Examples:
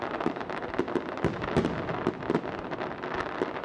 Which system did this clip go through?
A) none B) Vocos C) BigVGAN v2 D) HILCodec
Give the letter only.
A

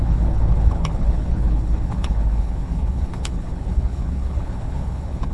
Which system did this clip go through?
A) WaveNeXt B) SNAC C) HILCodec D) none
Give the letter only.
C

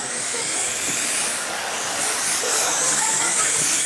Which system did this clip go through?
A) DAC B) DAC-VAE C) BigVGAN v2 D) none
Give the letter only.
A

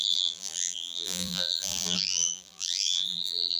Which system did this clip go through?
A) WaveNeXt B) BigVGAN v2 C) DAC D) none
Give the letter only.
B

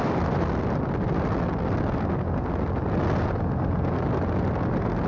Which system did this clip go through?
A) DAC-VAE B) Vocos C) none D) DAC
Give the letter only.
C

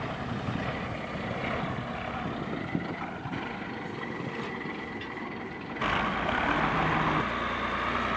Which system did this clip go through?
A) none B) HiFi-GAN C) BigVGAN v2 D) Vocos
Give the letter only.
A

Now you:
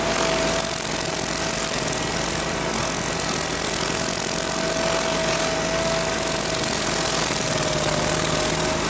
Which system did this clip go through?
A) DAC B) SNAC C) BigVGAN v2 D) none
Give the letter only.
D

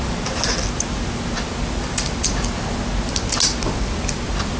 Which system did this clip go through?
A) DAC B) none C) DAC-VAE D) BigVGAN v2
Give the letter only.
B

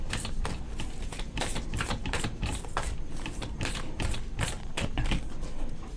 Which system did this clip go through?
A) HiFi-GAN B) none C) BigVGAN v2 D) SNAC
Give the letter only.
C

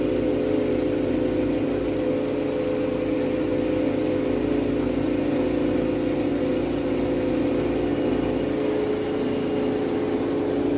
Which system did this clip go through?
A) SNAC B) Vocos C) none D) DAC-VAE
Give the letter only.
C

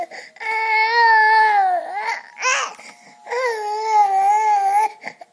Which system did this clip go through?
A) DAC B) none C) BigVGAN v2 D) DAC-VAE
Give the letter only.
B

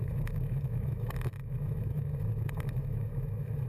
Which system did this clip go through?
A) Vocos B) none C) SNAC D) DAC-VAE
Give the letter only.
D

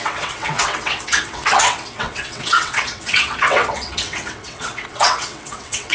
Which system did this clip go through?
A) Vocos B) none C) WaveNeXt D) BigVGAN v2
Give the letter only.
C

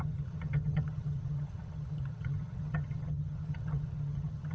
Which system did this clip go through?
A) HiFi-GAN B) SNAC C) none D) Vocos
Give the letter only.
A